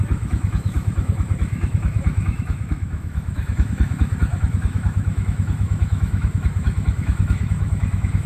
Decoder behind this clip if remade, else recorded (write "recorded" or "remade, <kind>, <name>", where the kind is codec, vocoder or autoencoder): remade, autoencoder, DAC-VAE